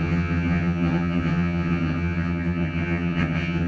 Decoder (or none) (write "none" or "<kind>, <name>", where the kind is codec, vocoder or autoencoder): vocoder, HiFi-GAN